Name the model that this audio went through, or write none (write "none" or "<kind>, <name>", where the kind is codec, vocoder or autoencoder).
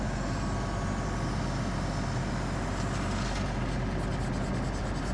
none